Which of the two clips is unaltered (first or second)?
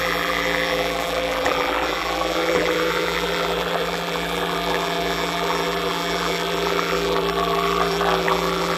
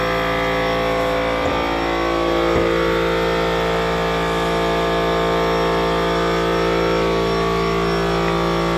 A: second